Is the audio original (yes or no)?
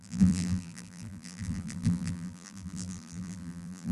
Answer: no